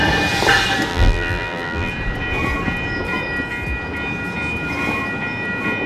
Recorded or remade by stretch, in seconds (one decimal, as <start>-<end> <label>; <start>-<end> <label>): 0.0-0.9 recorded; 0.9-1.9 remade; 1.9-5.9 recorded